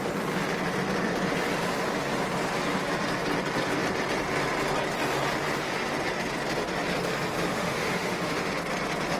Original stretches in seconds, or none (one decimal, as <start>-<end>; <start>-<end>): 0.0-7.5; 8.5-9.2